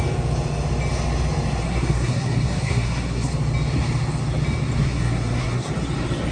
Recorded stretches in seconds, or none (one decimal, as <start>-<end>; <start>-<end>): 0.0-1.6; 3.3-4.8; 5.7-6.3